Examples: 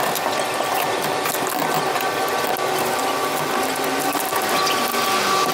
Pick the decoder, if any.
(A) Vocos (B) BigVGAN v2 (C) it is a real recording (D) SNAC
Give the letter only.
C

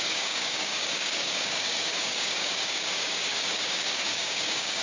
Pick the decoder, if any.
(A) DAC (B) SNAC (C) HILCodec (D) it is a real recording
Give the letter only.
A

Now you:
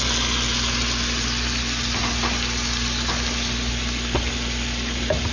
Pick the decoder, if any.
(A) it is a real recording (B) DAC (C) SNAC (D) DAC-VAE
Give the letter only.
A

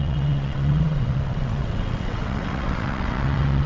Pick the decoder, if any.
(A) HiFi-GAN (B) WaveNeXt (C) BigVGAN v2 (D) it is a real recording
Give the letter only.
B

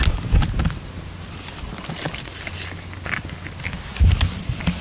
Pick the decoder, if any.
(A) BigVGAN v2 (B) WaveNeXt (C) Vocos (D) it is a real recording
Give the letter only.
D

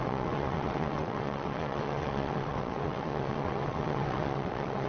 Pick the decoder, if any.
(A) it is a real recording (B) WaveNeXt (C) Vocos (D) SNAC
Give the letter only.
B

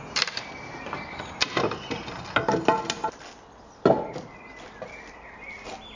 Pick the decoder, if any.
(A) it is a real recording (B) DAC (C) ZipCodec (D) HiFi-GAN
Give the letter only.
A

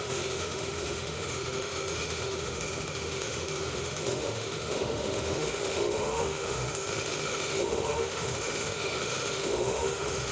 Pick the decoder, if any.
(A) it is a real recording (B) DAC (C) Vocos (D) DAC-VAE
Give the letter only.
D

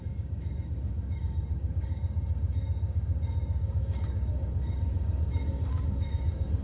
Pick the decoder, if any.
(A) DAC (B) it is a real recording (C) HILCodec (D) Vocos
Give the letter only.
A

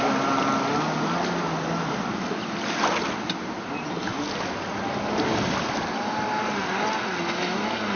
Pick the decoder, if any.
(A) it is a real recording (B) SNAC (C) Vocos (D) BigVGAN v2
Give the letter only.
A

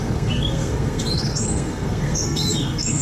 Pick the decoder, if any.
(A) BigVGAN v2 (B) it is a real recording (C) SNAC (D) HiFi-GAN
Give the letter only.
C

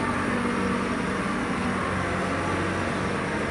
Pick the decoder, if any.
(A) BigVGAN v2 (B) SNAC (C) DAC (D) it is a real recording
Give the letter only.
D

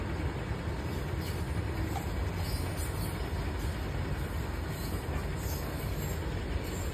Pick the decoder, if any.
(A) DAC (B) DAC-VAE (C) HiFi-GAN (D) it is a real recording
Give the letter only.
D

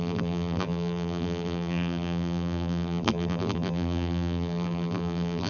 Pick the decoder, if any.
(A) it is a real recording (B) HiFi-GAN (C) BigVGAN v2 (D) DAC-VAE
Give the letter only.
C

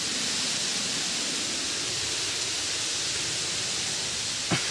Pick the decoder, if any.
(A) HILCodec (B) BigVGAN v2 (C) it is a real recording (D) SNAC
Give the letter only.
C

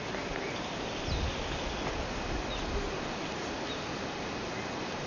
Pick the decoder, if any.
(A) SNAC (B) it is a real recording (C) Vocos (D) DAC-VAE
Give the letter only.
B